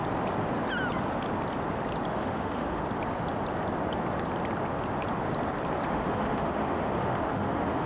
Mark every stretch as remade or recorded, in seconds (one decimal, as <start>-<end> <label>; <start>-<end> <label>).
0.0-2.1 recorded; 2.1-2.8 remade; 2.8-5.9 recorded; 5.9-7.9 remade